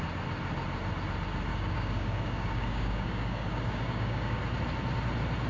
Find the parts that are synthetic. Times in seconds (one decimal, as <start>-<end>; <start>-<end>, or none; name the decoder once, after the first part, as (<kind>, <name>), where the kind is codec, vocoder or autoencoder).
1.5-4.4 (codec, DAC)